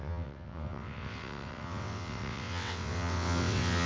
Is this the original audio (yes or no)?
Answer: no